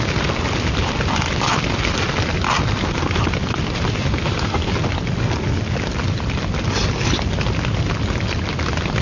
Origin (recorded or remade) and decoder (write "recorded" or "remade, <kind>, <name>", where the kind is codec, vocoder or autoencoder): recorded